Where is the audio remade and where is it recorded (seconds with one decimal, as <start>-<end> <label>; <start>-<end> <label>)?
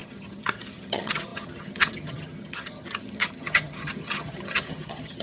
0.0-5.2 remade